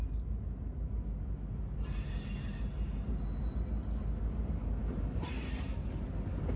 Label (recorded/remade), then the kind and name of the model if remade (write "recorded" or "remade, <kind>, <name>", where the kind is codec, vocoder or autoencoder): recorded